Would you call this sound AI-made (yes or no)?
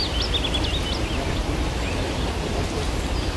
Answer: no